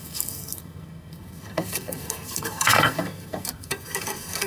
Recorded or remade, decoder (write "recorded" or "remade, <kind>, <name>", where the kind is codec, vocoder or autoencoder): remade, codec, SNAC